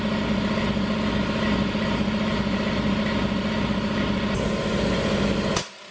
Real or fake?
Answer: real